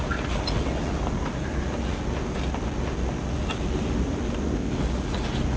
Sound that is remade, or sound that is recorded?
recorded